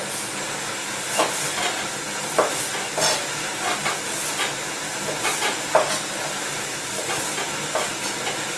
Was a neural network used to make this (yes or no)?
no